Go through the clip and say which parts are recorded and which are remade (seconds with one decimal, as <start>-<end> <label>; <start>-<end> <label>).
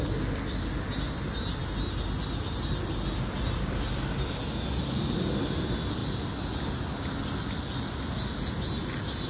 0.0-9.3 recorded